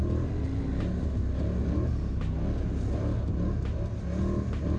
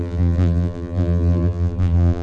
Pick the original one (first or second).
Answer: first